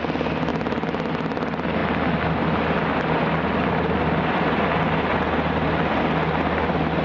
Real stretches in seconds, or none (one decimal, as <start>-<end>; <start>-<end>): 0.0-7.0